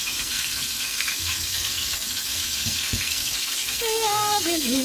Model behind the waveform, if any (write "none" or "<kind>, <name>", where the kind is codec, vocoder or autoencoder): codec, SNAC